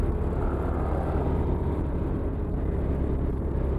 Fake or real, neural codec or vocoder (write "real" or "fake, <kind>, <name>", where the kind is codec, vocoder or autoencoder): real